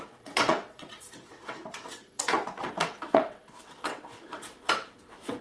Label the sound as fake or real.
fake